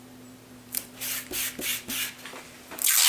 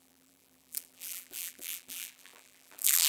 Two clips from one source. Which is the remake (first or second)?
second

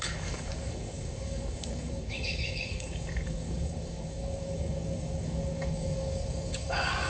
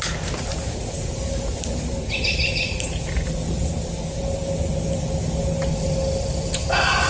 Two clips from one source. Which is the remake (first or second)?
first